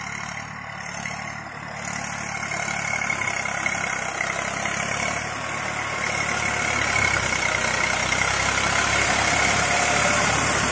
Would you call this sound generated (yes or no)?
no